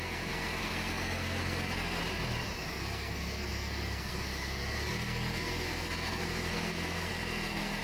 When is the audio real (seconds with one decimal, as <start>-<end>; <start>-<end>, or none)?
2.0-2.7